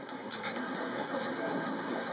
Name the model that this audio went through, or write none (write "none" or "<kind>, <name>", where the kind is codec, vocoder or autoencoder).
codec, SNAC